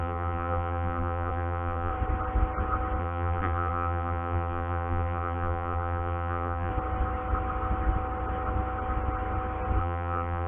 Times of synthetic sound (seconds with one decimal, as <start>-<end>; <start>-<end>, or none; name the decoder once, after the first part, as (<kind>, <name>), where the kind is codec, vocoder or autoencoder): 0.0-1.9 (vocoder, BigVGAN v2); 3.0-6.7; 9.8-10.5